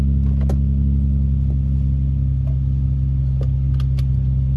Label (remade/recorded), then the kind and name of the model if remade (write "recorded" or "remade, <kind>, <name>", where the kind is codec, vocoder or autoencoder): recorded